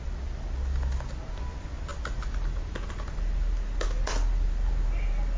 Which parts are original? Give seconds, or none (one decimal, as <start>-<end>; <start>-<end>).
0.0-5.4